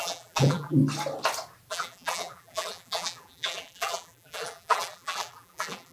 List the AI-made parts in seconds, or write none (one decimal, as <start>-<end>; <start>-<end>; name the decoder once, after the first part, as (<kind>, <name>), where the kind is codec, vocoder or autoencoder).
0.0-0.8 (vocoder, BigVGAN v2); 1.7-5.9

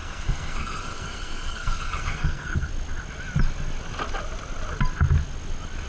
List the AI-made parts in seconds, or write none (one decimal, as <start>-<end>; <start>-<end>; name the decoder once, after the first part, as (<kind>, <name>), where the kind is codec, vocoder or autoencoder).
0.0-2.7 (codec, SNAC)

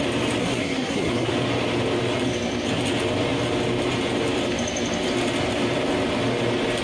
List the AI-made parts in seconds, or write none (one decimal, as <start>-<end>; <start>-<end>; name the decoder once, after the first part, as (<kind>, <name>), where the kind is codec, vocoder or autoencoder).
0.4-1.3 (codec, SNAC)

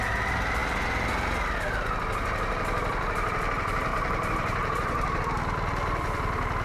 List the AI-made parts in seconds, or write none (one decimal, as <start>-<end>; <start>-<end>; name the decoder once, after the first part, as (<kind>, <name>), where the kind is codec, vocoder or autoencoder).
3.9-5.2 (vocoder, BigVGAN v2)

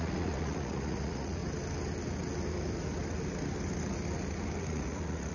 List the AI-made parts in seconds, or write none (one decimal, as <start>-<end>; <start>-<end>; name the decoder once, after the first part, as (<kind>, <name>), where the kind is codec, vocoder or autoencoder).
0.0-1.4 (vocoder, Vocos); 4.6-5.3

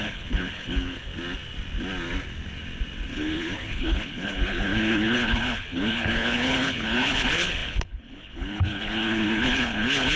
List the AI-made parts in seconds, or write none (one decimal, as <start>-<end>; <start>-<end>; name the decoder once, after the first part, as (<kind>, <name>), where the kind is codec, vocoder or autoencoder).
0.0-1.1 (codec, HILCodec); 3.1-10.2